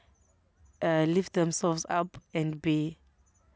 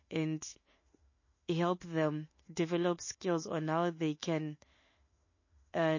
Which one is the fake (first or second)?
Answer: second